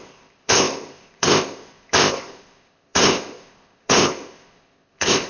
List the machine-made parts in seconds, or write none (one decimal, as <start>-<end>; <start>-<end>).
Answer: 0.0-5.3